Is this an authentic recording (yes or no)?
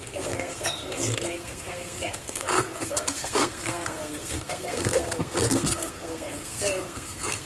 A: no